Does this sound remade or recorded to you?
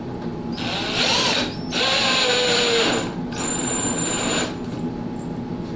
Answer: recorded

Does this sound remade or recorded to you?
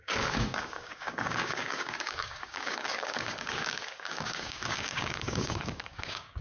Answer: remade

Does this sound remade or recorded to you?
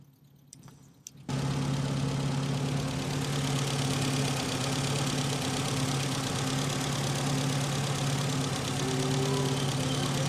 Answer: recorded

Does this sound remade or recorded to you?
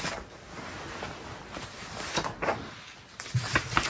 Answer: recorded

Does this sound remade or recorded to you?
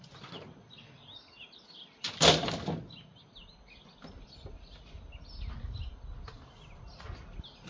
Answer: recorded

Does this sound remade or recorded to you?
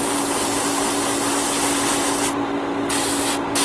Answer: recorded